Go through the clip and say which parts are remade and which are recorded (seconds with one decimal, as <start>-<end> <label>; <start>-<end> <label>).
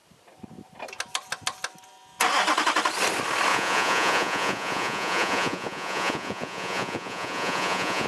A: 0.0-3.5 recorded; 3.5-8.1 remade